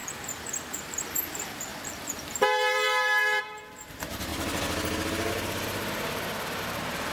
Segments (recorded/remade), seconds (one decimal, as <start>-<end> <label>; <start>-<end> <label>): 0.0-4.3 remade; 4.3-5.3 recorded; 5.3-7.1 remade